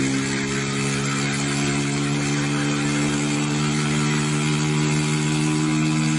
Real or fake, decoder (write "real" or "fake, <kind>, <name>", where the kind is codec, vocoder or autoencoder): real